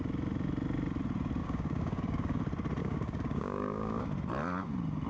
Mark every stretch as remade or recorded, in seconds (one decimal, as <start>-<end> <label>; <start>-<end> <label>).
0.0-1.4 recorded; 1.4-2.4 remade; 2.4-2.8 recorded; 2.8-4.0 remade; 4.0-5.1 recorded